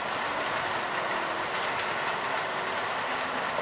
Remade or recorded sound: recorded